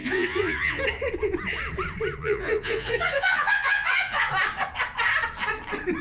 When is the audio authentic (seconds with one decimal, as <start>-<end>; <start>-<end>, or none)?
0.8-2.2; 4.3-6.0